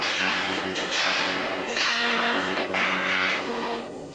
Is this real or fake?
fake